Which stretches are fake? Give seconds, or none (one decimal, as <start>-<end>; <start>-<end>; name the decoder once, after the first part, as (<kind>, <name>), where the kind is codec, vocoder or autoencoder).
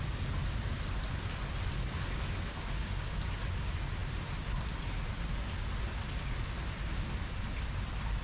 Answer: none